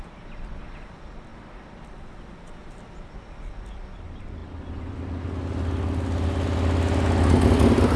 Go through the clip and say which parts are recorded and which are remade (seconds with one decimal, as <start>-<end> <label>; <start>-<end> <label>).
0.0-8.0 recorded